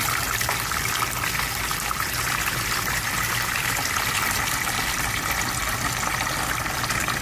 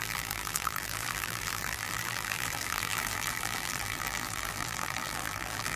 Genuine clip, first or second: first